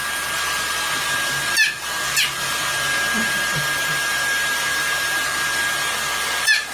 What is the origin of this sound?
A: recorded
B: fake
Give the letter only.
A